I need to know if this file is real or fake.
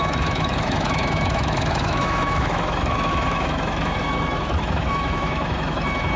fake